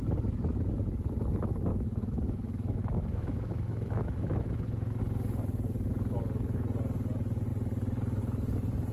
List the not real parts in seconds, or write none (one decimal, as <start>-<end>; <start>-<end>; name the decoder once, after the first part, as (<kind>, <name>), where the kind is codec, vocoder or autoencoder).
1.7-5.0 (autoencoder, DAC-VAE)